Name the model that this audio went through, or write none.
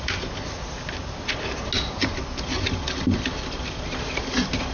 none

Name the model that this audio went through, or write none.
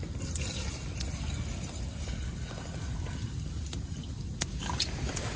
none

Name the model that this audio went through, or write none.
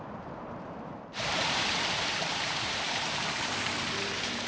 vocoder, BigVGAN v2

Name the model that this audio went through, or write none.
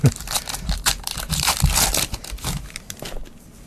none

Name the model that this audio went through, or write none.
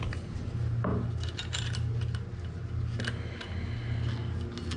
none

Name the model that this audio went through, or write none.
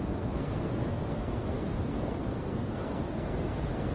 codec, SNAC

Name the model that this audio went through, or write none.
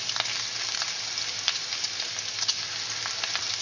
none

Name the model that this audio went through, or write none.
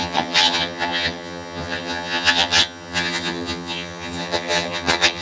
vocoder, HiFi-GAN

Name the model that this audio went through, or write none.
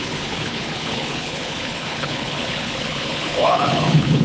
codec, HILCodec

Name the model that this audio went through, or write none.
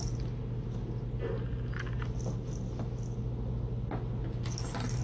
none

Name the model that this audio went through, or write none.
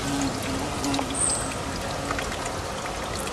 none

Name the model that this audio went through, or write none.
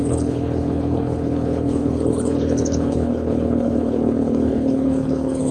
codec, HILCodec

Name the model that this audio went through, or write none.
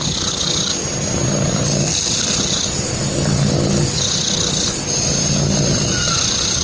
none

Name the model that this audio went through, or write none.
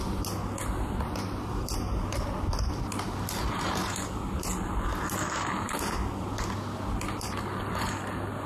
none